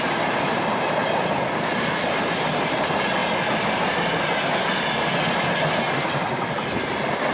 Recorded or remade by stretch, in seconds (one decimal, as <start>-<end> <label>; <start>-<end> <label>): 0.0-7.3 recorded